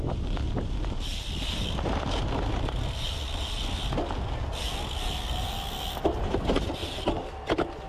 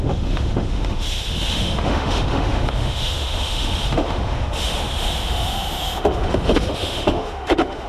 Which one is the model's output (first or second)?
second